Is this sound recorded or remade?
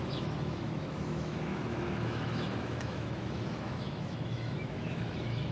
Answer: remade